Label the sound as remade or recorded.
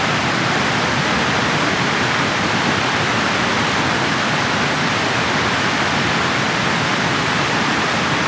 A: recorded